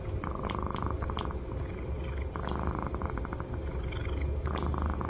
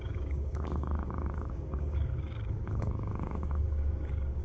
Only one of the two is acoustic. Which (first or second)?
first